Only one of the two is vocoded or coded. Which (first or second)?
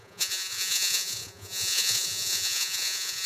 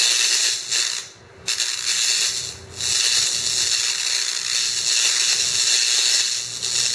first